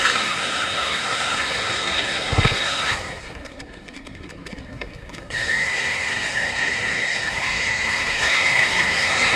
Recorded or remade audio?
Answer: remade